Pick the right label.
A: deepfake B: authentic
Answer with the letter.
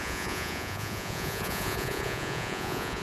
A